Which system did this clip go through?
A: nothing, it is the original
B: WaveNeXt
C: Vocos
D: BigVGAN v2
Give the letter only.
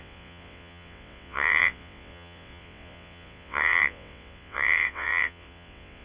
B